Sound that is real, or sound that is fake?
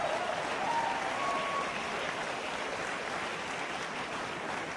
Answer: fake